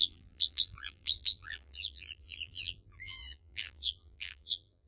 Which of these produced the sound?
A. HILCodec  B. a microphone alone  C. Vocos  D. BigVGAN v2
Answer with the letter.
D